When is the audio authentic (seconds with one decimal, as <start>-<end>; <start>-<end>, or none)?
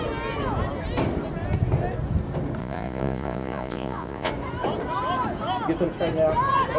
0.0-2.6; 4.3-6.8